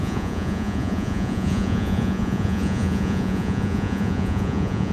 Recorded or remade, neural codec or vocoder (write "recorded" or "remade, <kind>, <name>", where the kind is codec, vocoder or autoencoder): remade, vocoder, Vocos